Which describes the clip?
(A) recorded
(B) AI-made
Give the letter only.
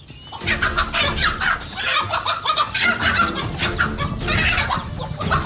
A